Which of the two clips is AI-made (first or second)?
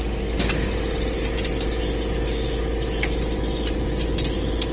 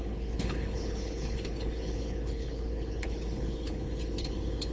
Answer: second